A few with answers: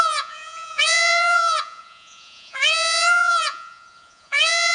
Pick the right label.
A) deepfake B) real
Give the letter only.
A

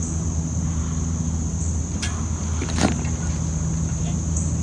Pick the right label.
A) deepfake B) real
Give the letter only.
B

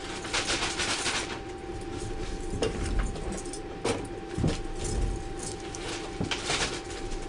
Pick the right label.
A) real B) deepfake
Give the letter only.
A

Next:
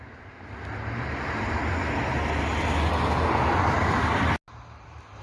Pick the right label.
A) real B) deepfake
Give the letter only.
A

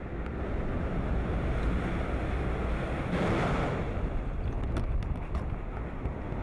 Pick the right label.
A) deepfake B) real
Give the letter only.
B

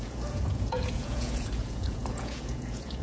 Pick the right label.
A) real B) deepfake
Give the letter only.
B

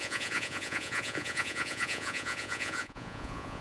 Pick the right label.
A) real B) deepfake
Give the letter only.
B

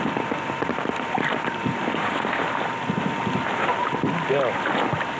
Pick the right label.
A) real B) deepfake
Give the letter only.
A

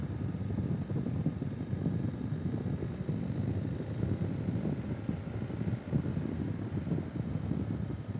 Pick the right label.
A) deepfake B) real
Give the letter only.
B